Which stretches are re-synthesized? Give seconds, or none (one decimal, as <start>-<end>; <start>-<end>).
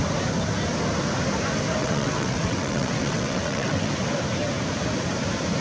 1.8-3.9